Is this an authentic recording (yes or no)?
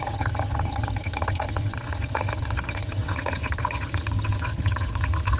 no